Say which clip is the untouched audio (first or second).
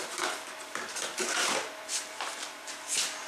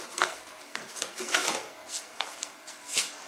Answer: first